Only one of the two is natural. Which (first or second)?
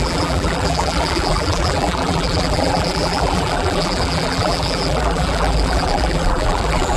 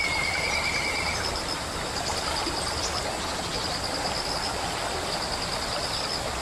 second